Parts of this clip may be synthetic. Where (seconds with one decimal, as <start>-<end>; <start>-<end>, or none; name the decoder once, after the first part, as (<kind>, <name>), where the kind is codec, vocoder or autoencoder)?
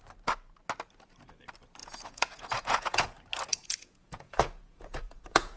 1.8-3.1 (vocoder, Vocos); 3.5-5.6